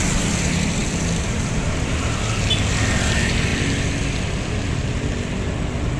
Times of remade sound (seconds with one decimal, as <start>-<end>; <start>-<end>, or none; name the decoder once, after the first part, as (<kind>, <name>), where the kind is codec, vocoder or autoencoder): none